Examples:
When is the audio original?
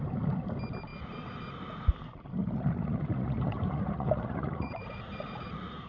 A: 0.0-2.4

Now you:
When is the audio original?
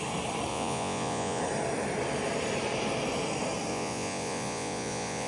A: 0.0-0.5; 1.4-3.7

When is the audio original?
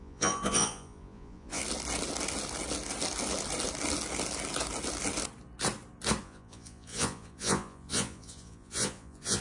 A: 1.6-6.2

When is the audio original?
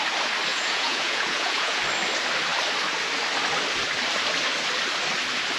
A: 0.0-0.5; 1.8-5.6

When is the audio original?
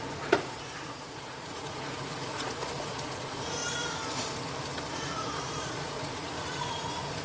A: 3.6-4.9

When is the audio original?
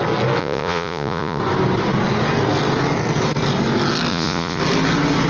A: 0.0-0.4; 1.4-4.1; 4.6-5.3